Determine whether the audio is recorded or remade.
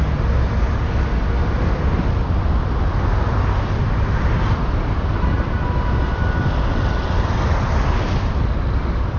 recorded